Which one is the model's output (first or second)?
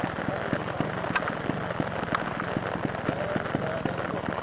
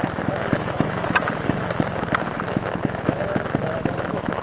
second